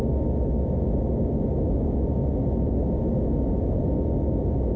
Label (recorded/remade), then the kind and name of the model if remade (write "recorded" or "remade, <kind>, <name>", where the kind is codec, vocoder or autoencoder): recorded